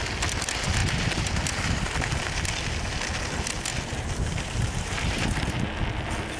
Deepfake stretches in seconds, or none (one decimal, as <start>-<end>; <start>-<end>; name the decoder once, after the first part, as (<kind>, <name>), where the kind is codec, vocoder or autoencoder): 0.8-2.2 (vocoder, BigVGAN v2); 3.7-5.6